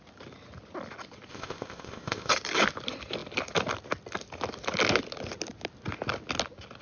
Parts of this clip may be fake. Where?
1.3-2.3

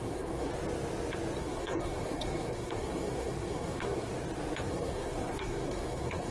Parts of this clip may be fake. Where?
0.0-0.5; 1.4-4.1; 4.7-6.3

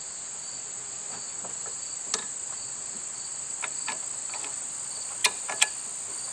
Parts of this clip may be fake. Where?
none

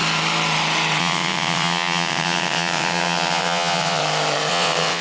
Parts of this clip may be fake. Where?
1.0-4.0; 4.5-5.0

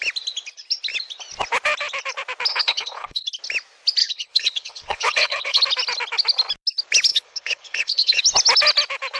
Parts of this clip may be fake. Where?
2.5-3.3; 4.0-5.6; 7.1-8.2

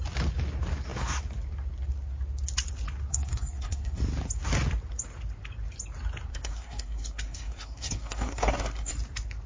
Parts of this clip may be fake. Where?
3.1-4.0; 6.3-8.9